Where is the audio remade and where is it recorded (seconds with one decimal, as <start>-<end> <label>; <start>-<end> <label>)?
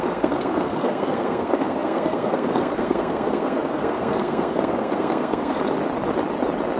0.0-5.6 remade; 5.6-6.8 recorded